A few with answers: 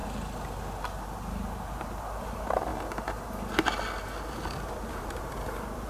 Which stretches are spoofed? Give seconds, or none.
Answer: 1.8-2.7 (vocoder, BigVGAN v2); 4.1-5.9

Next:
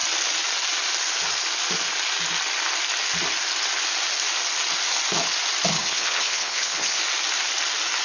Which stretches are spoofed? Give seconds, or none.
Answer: 5.7-7.0 (codec, HILCodec)

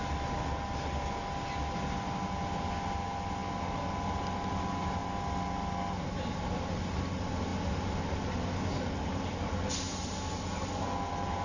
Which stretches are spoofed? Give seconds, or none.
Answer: none